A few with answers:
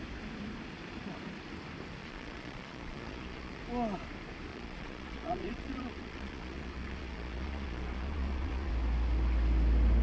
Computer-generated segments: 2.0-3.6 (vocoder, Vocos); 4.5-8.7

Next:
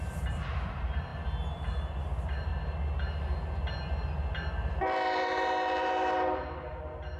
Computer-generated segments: 0.0-1.1 (vocoder, BigVGAN v2); 1.7-2.5; 4.7-7.2